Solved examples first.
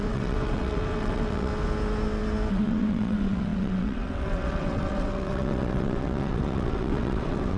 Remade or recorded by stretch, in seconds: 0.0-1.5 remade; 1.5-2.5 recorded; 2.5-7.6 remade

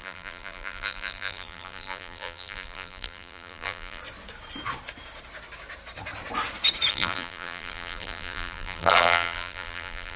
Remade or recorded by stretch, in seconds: 0.0-4.0 remade; 4.0-6.9 recorded; 6.9-10.2 remade

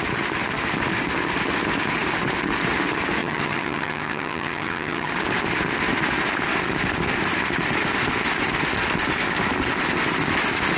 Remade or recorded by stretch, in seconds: 0.0-3.2 recorded; 3.2-5.1 remade; 5.1-10.8 recorded

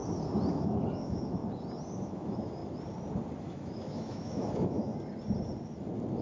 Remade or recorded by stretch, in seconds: 0.0-0.5 recorded; 0.5-1.4 remade; 1.4-1.9 recorded; 1.9-2.6 remade; 2.6-3.4 recorded; 3.4-4.9 remade; 4.9-6.2 recorded

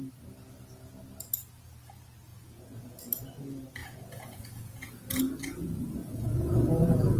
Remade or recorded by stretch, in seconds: 0.0-2.3 recorded; 2.3-3.0 remade; 3.0-3.8 recorded; 3.8-5.2 remade; 5.2-6.0 recorded; 6.0-7.2 remade

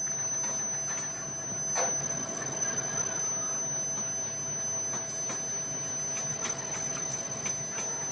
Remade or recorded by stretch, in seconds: 0.0-2.0 recorded; 2.0-3.2 remade; 3.2-6.3 recorded; 6.3-7.5 remade; 7.5-8.1 recorded